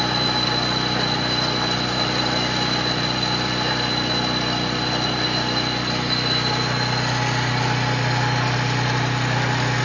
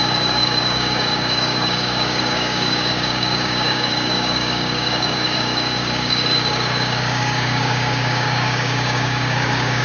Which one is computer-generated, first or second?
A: second